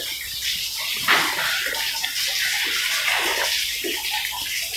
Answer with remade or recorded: recorded